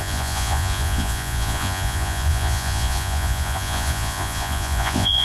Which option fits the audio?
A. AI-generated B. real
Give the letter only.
A